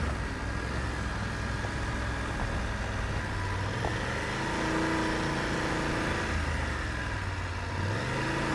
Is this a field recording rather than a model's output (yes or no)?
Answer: yes